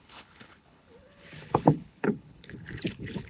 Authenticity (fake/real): fake